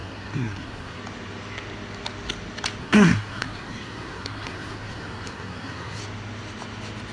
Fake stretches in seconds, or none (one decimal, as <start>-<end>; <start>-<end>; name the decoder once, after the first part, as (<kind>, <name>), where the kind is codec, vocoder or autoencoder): 0.0-1.0 (codec, SNAC); 2.8-6.0